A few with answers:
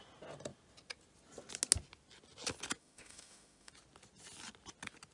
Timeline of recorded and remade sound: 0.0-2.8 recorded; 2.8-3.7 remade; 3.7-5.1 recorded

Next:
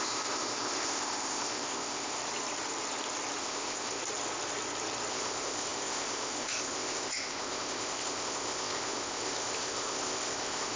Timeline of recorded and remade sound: 0.0-2.2 remade; 2.2-3.4 recorded; 3.4-4.0 remade; 4.0-5.1 recorded; 5.1-10.8 remade

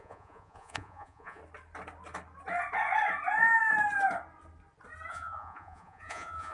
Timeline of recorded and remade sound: 0.0-1.4 remade; 1.4-5.1 recorded; 5.1-6.5 remade

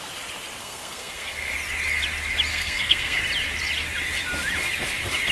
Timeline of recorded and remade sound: 0.0-0.6 recorded; 0.6-1.5 remade; 1.5-2.5 recorded; 2.5-3.2 remade; 3.2-5.3 recorded

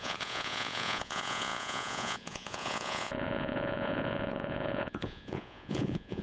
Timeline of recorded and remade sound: 0.0-6.2 remade

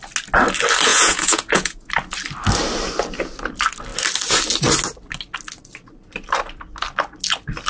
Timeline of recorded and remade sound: 0.0-0.9 recorded; 0.9-1.9 remade; 1.9-7.7 recorded